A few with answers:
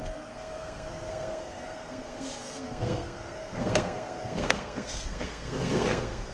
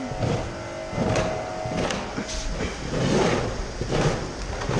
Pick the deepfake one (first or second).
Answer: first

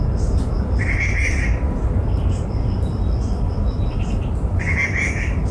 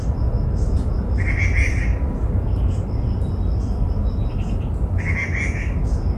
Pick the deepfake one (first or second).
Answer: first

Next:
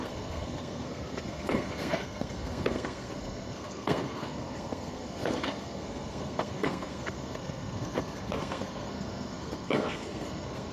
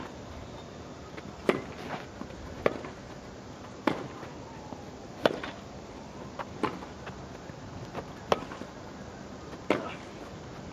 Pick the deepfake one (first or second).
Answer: first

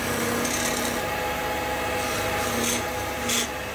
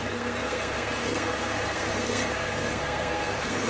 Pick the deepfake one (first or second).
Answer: second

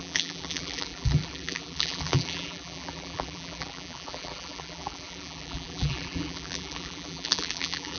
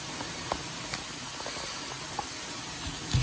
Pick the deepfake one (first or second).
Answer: first